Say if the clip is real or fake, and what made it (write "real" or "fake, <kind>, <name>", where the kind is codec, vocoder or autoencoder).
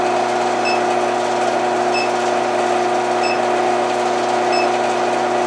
real